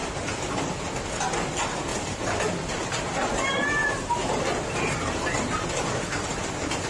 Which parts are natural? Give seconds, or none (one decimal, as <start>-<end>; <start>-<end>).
0.7-6.9